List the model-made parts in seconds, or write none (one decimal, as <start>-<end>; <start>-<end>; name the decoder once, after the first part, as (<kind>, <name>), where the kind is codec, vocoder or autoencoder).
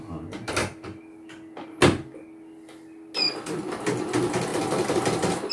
4.5-5.5 (vocoder, BigVGAN v2)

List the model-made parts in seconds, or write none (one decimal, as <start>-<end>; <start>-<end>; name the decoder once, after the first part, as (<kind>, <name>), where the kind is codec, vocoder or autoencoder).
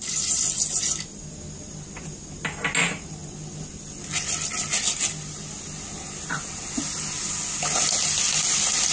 none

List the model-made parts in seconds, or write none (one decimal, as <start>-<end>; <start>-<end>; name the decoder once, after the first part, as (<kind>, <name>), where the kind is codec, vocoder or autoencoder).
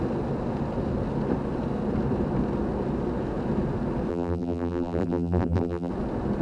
4.1-5.9 (vocoder, BigVGAN v2)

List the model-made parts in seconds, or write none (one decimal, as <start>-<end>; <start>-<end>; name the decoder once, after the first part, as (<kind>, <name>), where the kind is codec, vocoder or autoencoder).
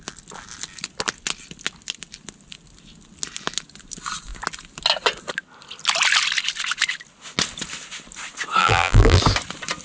8.6-9.2 (vocoder, BigVGAN v2)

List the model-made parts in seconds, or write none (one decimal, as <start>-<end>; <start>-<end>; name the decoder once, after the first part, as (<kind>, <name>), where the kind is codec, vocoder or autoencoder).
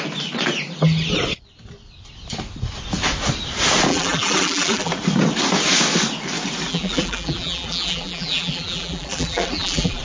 3.9-4.9 (vocoder, BigVGAN v2); 6.7-10.0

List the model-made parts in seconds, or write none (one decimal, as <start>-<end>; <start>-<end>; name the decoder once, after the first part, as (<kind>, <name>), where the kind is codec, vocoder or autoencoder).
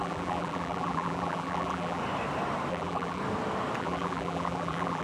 0.0-2.0 (vocoder, BigVGAN v2); 2.7-3.2; 3.8-5.0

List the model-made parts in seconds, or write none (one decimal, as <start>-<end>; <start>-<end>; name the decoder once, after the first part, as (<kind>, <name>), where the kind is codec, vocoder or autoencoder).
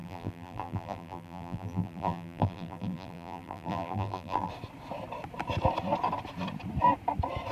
0.0-4.5 (vocoder, BigVGAN v2)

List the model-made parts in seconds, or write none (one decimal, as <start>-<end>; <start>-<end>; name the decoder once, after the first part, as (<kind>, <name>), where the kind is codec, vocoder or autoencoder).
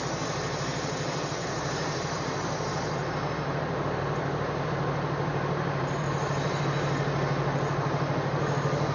1.4-6.6 (vocoder, BigVGAN v2)